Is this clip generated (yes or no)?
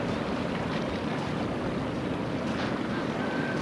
no